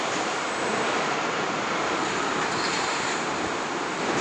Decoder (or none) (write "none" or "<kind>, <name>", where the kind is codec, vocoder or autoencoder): vocoder, BigVGAN v2